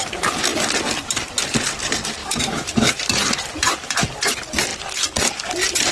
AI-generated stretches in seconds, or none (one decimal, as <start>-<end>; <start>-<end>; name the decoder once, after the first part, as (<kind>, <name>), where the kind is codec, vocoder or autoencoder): 2.2-3.0 (autoencoder, DAC-VAE)